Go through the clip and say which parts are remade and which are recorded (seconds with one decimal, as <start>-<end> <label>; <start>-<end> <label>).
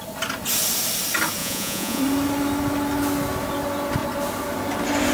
0.0-1.4 recorded; 1.4-2.0 remade; 2.0-5.1 recorded